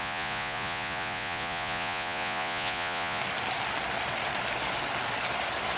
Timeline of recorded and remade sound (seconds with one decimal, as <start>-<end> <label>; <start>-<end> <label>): 0.0-3.2 remade; 3.2-5.8 recorded